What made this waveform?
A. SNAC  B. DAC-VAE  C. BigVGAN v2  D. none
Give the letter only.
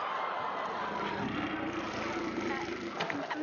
D